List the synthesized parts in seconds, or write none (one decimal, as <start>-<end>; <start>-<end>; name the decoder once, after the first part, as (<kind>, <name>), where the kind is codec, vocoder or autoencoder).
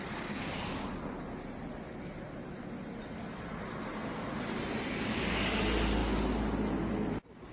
none